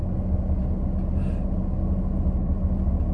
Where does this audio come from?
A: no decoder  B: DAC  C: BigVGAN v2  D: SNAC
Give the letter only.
A